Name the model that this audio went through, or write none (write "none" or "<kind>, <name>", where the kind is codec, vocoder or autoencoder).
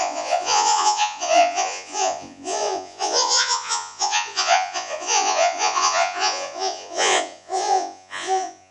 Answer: vocoder, Vocos